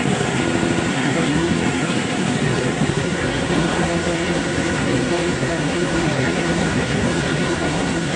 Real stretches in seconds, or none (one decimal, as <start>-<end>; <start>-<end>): 0.4-0.9